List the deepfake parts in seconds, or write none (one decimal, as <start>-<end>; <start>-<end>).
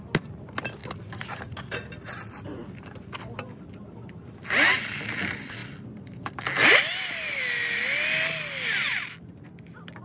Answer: 0.8-4.5; 5.6-7.4